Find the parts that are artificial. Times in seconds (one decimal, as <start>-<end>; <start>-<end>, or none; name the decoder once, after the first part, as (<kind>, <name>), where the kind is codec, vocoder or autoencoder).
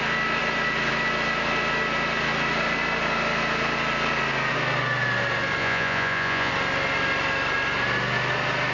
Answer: 5.6-6.5 (vocoder, Vocos)